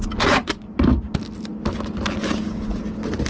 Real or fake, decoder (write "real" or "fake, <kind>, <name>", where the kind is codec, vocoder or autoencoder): real